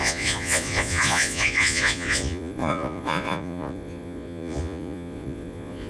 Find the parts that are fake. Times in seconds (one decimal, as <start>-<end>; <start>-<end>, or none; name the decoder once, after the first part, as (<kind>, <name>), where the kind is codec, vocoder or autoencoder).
0.0-5.9 (vocoder, Vocos)